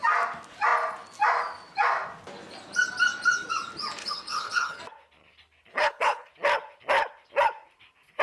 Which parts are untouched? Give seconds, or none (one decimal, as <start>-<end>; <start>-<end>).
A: 0.0-4.0; 4.8-5.7; 6.3-8.2